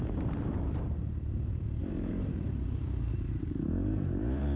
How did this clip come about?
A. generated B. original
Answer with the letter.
A